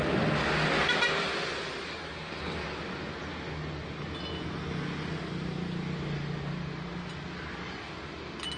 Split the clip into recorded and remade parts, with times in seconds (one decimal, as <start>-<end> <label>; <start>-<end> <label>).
0.0-1.7 recorded; 1.7-2.8 remade; 2.8-8.6 recorded